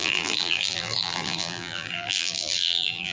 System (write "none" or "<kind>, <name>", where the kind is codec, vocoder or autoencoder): vocoder, BigVGAN v2